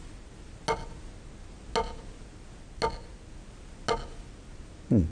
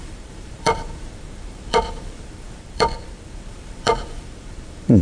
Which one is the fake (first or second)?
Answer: second